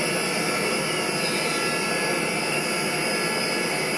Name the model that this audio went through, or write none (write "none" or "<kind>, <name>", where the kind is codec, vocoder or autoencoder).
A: none